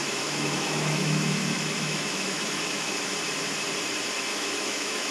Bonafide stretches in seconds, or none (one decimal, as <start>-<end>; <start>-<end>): 3.1-4.3